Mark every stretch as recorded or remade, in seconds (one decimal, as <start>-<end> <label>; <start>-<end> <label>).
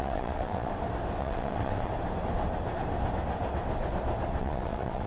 0.0-0.7 remade; 0.7-1.2 recorded; 1.2-1.9 remade; 1.9-4.4 recorded; 4.4-5.1 remade